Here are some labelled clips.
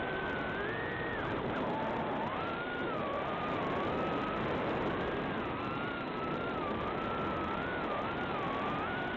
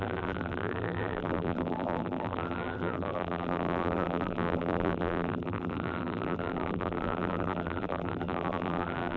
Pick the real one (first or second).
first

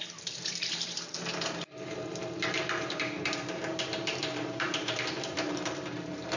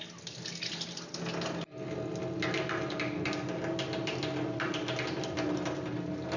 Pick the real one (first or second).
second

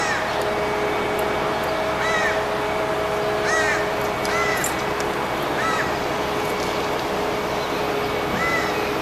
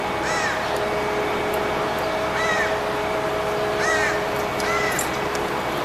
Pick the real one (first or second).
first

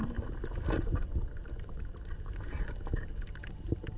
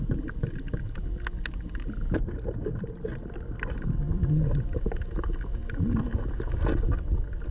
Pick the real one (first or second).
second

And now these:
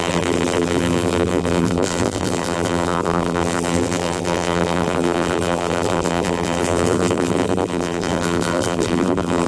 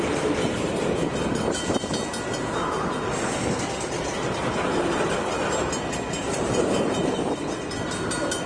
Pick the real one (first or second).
second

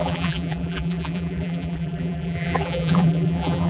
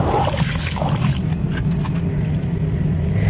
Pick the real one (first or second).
second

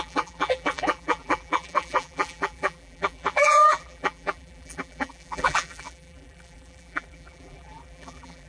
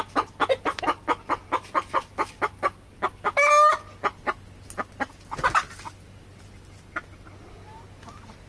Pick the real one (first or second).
second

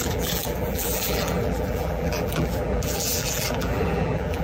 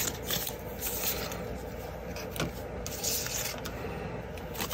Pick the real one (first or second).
second